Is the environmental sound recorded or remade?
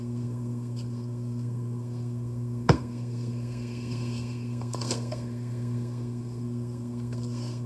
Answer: remade